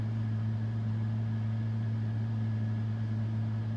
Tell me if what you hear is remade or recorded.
recorded